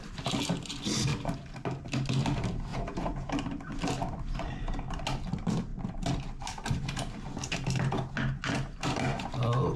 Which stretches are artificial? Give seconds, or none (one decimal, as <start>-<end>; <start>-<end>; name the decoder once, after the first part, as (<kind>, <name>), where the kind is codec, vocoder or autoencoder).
2.7-3.3 (vocoder, Vocos)

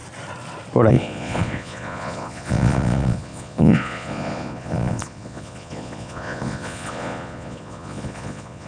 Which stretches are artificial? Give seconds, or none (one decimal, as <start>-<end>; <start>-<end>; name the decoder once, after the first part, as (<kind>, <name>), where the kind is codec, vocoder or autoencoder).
0.9-8.7 (vocoder, Vocos)

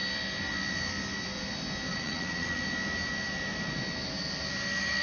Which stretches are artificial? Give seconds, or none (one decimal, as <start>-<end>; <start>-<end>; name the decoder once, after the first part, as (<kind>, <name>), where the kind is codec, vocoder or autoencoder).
1.9-2.6 (vocoder, Vocos)

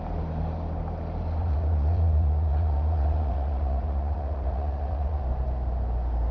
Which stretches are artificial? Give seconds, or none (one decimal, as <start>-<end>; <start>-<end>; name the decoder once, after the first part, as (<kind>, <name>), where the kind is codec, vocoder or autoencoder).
1.4-5.2 (vocoder, Vocos)

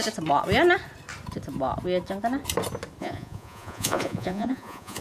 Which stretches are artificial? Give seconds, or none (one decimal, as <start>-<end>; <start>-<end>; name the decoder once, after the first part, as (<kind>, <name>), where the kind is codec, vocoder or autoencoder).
3.0-5.0 (vocoder, Vocos)

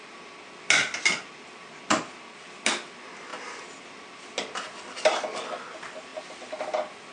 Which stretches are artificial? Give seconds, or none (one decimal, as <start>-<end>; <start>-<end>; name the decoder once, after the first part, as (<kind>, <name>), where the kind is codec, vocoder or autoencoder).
none

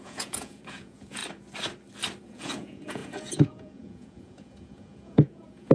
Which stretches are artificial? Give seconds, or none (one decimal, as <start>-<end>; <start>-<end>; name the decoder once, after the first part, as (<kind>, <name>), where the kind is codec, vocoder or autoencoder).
0.0-1.2 (vocoder, Vocos); 2.2-5.7